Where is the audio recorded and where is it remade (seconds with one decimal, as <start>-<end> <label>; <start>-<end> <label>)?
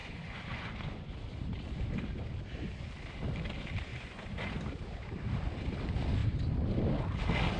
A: 0.0-1.1 remade; 1.1-3.9 recorded; 3.9-4.5 remade; 4.5-7.6 recorded